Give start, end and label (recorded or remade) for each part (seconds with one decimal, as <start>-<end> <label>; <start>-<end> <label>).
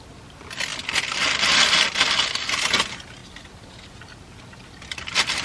0.0-5.4 recorded